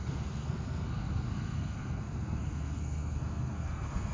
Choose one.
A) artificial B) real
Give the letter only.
A